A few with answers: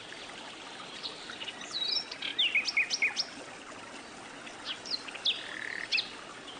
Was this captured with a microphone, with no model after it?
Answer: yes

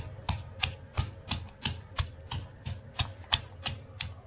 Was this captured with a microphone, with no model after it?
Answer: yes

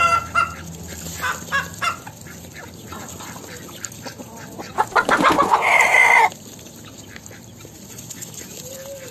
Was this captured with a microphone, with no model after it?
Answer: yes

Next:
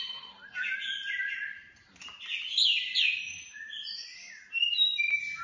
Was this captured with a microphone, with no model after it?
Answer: yes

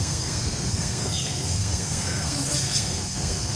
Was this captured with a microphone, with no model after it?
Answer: no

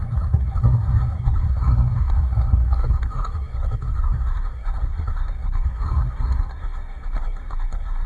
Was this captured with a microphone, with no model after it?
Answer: no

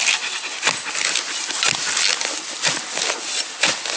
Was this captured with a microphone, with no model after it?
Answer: yes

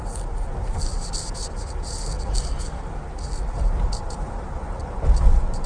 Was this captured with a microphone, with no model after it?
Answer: yes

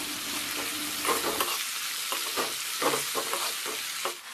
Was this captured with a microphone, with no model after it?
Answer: yes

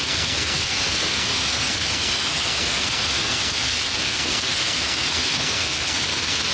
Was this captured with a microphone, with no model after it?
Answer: no